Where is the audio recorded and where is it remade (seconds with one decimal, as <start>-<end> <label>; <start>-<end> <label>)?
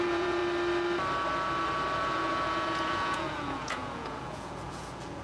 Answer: 0.0-0.4 remade; 0.4-2.0 recorded; 2.0-5.2 remade